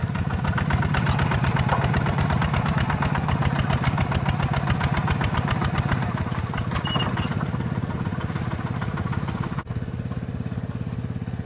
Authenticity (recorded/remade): recorded